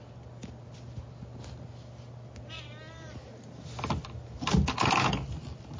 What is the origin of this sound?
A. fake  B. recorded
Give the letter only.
B